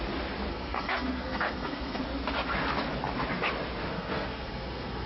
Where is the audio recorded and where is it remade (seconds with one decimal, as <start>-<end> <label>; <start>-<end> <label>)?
0.0-0.5 recorded; 0.5-2.0 remade; 2.0-3.9 recorded; 3.9-5.1 remade